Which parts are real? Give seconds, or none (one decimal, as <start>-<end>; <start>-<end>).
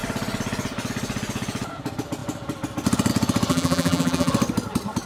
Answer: 0.0-3.5; 4.3-5.1